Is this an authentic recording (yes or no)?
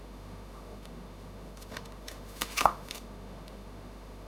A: no